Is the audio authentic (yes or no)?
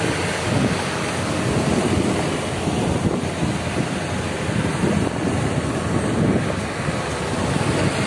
yes